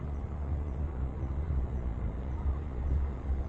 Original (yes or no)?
no